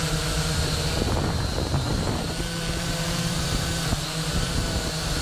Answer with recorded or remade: remade